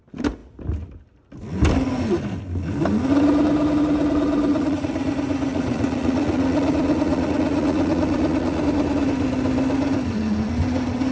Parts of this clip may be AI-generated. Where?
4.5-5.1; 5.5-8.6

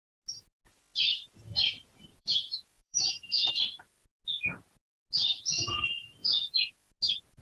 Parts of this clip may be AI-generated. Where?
2.1-3.5; 6.2-6.7

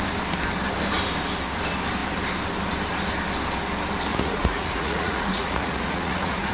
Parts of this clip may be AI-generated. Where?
4.1-6.5

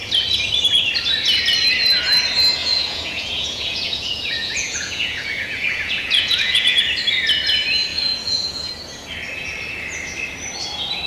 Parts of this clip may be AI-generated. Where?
2.6-6.8; 7.9-8.7

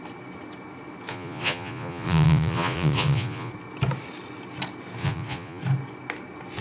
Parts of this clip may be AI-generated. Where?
1.1-3.5; 5.0-5.6

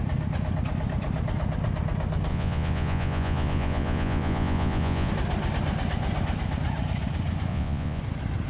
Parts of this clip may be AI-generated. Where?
2.3-5.1; 7.5-8.0